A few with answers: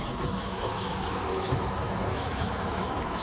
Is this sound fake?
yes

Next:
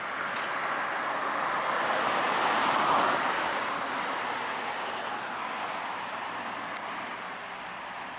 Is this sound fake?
no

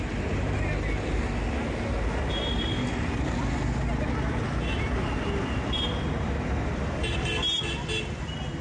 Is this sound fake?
no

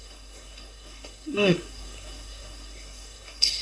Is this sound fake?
yes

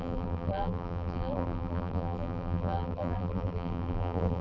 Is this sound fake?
yes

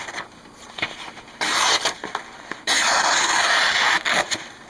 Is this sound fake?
no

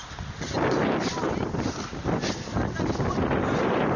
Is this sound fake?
no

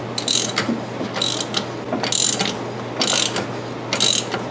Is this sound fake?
no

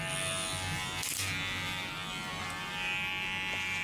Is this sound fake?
no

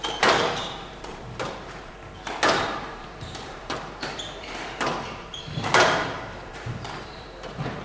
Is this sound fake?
yes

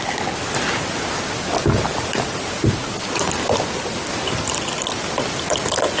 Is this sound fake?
no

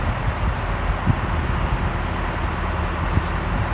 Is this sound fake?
no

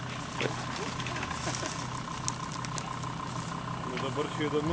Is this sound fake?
no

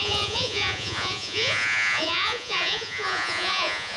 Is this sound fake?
yes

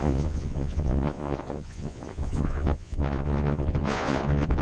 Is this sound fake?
yes